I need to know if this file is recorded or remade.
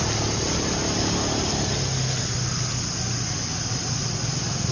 recorded